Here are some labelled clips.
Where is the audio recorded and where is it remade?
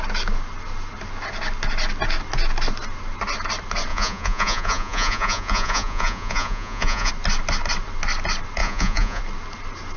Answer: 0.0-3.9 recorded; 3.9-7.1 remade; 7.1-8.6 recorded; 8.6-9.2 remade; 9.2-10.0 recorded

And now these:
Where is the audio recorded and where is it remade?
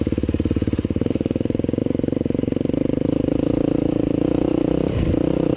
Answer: 0.0-5.6 recorded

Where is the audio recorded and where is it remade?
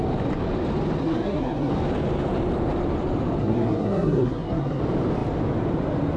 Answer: 0.0-1.0 recorded; 1.0-1.7 remade; 1.7-3.4 recorded; 3.4-4.8 remade; 4.8-6.2 recorded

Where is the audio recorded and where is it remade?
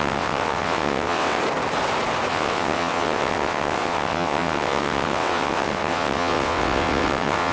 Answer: 0.0-1.4 remade; 1.4-2.3 recorded; 2.3-7.5 remade